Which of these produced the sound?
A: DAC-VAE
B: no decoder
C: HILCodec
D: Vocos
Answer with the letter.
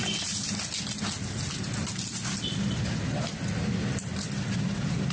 B